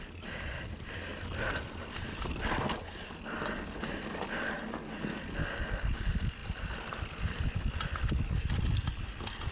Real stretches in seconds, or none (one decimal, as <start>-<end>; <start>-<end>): 0.0-9.5